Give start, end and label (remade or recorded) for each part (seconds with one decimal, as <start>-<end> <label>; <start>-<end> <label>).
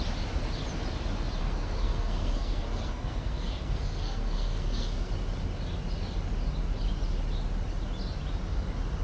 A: 0.0-1.4 recorded; 1.4-5.1 remade; 5.1-9.0 recorded